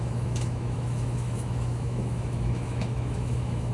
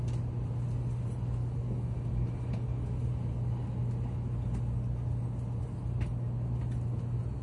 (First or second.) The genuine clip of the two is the second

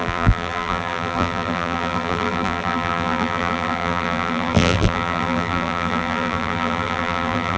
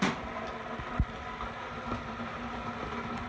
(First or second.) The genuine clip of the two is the second